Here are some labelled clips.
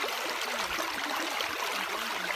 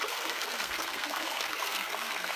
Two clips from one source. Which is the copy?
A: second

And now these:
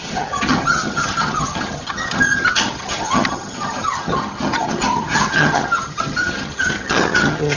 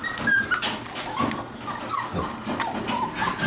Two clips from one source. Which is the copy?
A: first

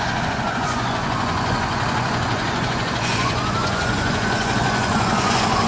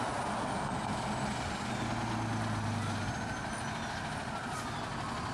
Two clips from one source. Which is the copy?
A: first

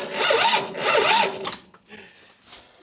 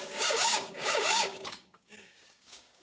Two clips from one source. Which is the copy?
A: second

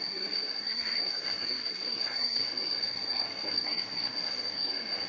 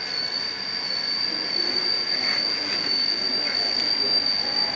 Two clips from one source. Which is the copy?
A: first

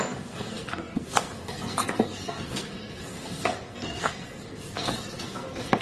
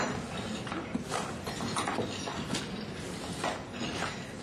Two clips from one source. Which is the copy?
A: first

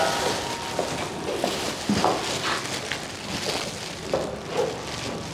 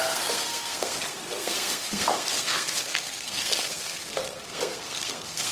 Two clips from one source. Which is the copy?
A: second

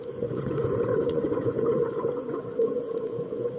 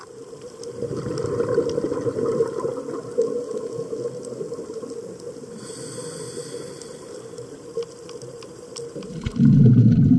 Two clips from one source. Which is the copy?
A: first